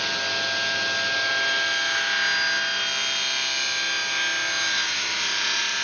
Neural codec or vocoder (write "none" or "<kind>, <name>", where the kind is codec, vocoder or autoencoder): none